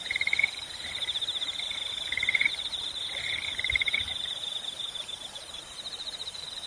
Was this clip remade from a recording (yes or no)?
yes